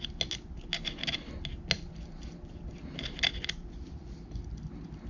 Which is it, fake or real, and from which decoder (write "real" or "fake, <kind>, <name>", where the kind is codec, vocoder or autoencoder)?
real